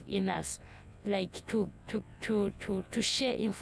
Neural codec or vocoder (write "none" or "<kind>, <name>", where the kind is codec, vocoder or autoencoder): vocoder, WaveNeXt